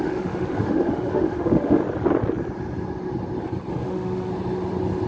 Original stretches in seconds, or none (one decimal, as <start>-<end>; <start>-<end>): 1.8-3.7; 4.3-5.1